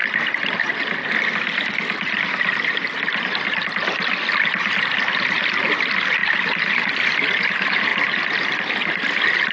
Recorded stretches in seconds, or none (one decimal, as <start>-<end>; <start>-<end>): 0.0-9.5